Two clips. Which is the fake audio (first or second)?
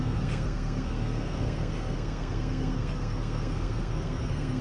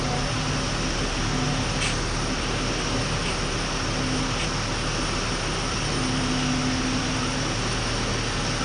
first